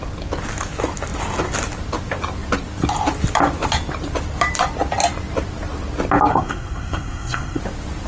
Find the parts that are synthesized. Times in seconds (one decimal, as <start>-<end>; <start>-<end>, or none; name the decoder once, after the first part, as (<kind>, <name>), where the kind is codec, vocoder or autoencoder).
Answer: 6.3-7.6 (codec, SNAC)